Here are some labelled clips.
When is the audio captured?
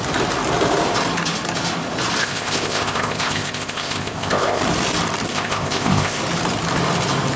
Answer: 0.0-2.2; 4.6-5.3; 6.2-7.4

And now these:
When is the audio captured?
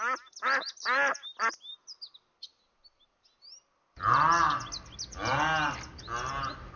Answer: 0.0-6.8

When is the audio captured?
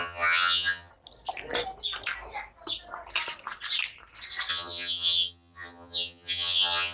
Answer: 0.9-4.5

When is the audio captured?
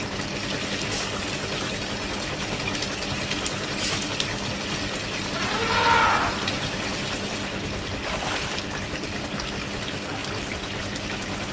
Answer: 0.0-11.5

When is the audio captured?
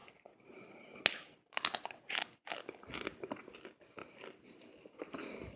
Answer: 0.0-5.6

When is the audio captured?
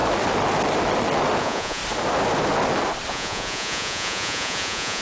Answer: 0.0-1.4; 1.8-3.1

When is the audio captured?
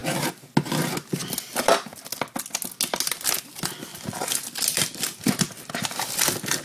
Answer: 0.0-3.9; 5.0-6.6